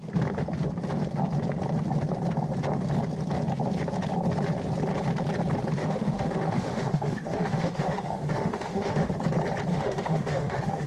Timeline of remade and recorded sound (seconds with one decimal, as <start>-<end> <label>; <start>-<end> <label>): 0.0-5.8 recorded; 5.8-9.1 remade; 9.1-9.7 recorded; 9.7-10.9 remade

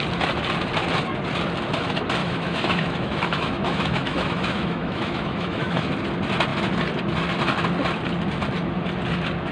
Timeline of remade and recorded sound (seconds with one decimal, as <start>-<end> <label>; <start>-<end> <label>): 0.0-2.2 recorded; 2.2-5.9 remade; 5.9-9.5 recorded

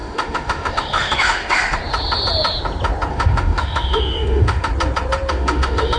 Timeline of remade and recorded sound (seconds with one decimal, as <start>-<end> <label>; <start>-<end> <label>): 0.0-1.8 remade; 1.8-3.1 recorded; 3.1-4.7 remade; 4.7-5.3 recorded; 5.3-6.0 remade